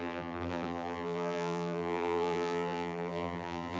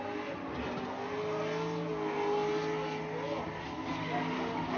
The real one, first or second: second